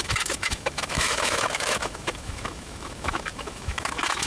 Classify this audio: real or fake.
fake